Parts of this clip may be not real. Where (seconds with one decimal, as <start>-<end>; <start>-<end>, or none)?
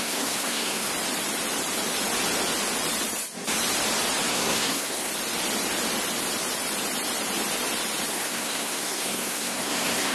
0.0-0.9; 4.3-5.1; 8.1-10.1